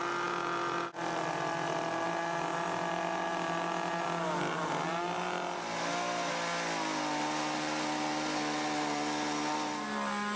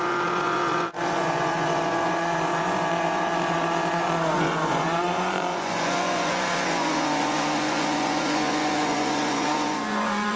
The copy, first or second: second